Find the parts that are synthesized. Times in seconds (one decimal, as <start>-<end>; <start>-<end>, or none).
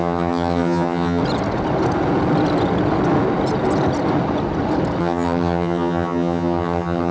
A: 0.0-1.2; 5.0-7.1